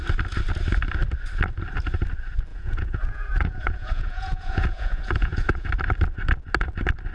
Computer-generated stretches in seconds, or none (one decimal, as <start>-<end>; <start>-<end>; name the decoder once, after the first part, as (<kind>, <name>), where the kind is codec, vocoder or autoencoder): 2.5-5.7 (vocoder, Vocos)